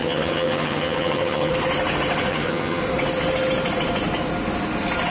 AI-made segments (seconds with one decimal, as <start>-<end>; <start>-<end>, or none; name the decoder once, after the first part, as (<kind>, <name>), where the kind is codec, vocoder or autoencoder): 0.0-1.5 (vocoder, HiFi-GAN); 2.3-2.8

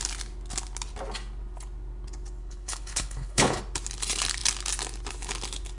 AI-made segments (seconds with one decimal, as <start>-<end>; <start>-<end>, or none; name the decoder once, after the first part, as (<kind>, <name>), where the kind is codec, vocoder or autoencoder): 2.4-3.6 (codec, HILCodec)